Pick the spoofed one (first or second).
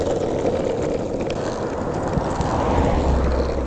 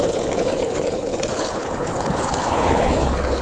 second